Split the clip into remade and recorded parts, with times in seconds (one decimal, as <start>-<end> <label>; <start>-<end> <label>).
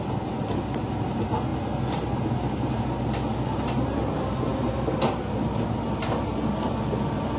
0.0-7.4 recorded